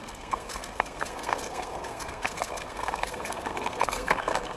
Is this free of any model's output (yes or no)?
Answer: no